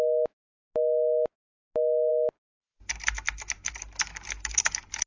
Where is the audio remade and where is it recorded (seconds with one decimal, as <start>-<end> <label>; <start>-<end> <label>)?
0.0-5.1 recorded